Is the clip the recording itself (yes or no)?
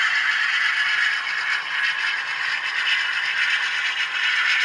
yes